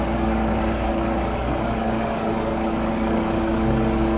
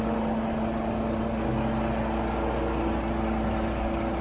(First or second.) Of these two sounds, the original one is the second